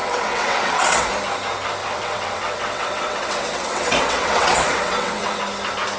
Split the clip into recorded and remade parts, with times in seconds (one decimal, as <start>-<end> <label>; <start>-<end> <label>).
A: 0.0-1.1 remade; 1.1-1.8 recorded; 1.8-5.4 remade; 5.4-6.0 recorded